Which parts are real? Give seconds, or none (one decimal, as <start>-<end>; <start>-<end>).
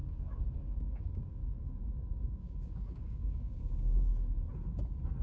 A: 1.4-2.1; 4.1-5.2